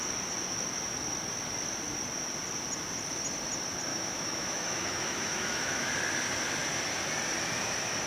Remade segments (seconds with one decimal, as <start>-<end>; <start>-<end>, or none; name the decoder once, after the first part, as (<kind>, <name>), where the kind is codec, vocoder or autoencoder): 3.9-5.9 (autoencoder, DAC-VAE)